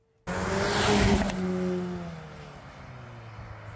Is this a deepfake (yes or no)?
no